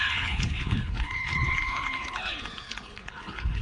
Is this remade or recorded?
remade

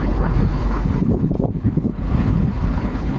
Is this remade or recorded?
remade